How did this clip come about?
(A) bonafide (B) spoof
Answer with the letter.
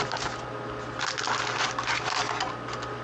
A